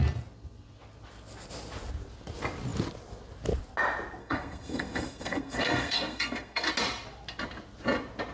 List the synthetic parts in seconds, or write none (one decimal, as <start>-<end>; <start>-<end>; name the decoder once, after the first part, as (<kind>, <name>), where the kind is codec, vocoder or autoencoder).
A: 4.2-6.7 (codec, SNAC)